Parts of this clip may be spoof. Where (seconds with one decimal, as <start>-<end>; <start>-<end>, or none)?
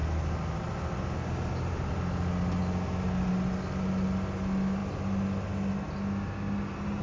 none